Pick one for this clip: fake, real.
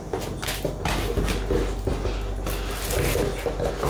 real